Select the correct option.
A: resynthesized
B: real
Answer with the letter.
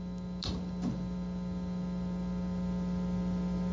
B